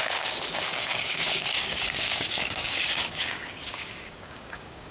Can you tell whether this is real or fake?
fake